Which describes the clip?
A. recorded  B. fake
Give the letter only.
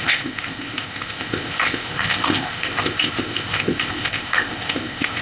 B